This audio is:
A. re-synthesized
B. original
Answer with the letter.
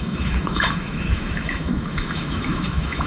A